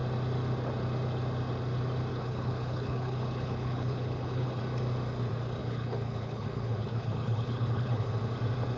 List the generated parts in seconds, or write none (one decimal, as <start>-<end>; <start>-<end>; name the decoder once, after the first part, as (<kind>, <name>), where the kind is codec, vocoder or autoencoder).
2.1-4.6 (codec, HILCodec); 5.6-8.1